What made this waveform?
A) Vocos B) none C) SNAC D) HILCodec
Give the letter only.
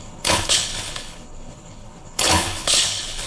D